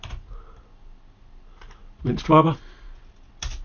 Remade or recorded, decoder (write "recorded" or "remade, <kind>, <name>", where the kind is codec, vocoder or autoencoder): recorded